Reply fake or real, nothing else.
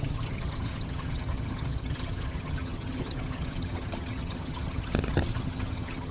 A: fake